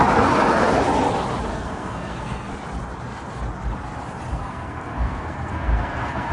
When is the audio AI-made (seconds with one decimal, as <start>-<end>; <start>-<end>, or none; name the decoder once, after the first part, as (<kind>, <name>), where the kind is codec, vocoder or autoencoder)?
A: 1.5-2.5 (codec, SNAC); 4.3-6.3